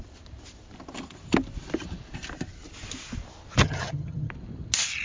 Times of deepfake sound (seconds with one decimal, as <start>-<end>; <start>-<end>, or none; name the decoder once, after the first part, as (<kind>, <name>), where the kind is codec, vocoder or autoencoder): 3.6-4.3 (vocoder, HiFi-GAN)

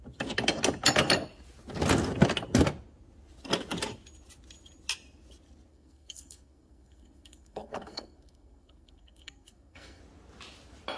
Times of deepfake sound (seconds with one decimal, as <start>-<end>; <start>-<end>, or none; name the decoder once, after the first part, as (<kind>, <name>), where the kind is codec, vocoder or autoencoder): 5.7-10.0 (codec, SNAC)

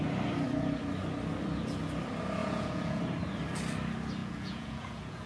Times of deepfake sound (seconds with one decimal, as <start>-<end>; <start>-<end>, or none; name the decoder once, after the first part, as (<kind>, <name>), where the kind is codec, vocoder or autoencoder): 2.4-3.0 (vocoder, Vocos); 4.2-5.3

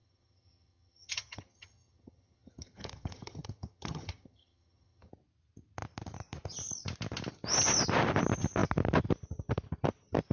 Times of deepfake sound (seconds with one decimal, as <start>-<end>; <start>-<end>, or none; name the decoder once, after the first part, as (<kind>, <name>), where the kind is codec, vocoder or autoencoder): 0.0-5.1 (vocoder, HiFi-GAN)